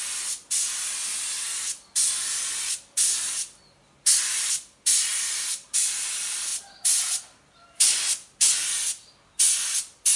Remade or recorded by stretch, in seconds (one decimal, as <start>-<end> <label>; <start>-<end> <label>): 0.0-10.2 recorded